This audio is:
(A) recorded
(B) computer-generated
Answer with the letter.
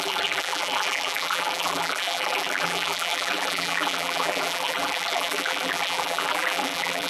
B